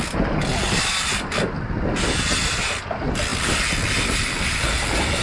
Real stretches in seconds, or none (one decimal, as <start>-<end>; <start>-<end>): 0.0-5.2